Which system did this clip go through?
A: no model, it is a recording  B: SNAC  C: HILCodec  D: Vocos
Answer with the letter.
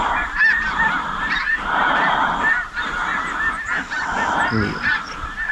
A